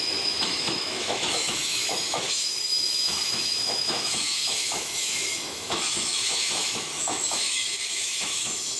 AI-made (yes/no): yes